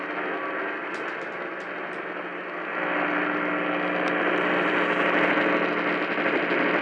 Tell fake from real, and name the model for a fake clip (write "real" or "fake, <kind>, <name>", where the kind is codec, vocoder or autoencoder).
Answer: real